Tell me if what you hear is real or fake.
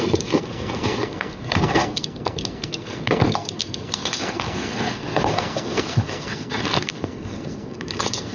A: fake